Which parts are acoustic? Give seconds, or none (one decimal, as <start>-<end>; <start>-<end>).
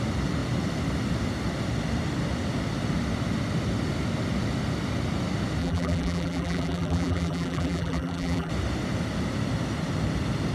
0.0-5.6; 8.5-10.5